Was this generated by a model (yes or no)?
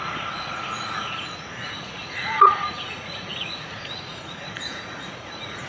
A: yes